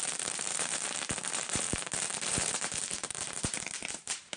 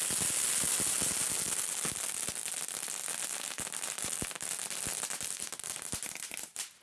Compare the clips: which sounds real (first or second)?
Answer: second